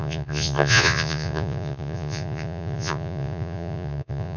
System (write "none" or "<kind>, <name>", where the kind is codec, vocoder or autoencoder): vocoder, Vocos